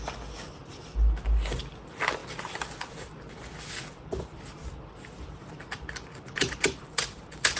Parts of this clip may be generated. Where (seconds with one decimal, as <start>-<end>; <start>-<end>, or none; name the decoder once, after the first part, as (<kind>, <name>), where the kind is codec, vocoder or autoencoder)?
none